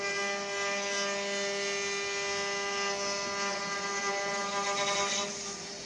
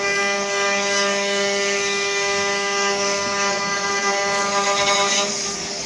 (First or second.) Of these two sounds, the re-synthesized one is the second